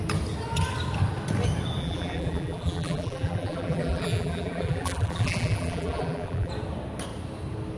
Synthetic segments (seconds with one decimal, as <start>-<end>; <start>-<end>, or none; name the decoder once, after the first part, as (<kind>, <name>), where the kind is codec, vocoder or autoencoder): 1.8-6.5 (vocoder, BigVGAN v2)